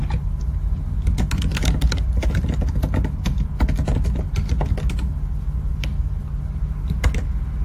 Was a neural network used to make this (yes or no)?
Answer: no